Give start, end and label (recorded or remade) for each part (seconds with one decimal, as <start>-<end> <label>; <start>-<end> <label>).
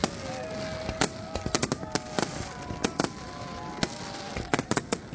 0.0-5.1 recorded